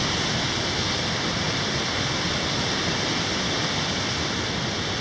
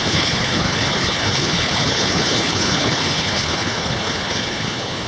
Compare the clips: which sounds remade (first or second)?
second